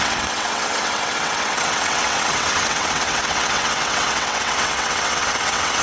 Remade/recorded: remade